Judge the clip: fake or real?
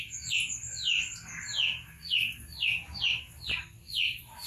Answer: real